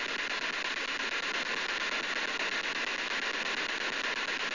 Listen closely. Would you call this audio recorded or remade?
recorded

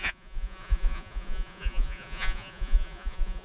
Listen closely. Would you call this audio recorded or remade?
remade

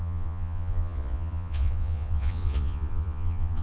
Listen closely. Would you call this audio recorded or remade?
remade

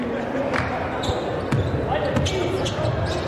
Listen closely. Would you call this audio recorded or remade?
recorded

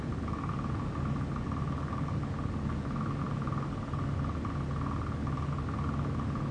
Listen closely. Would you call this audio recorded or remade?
recorded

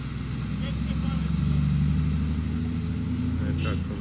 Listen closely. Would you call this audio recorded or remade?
recorded